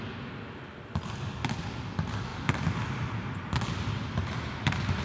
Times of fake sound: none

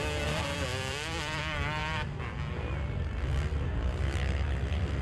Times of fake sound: 0.7-1.4 (vocoder, BigVGAN v2)